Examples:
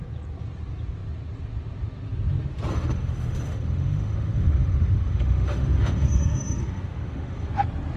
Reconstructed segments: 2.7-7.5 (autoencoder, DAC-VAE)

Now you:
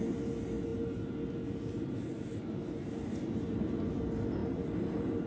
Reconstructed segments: 4.4-5.3 (vocoder, BigVGAN v2)

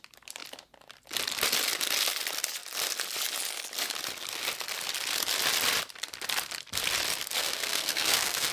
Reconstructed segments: 7.4-8.5 (codec, SNAC)